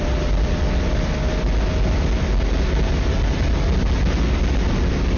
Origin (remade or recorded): recorded